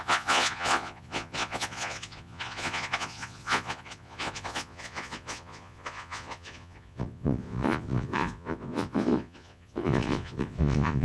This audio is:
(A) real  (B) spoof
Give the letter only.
B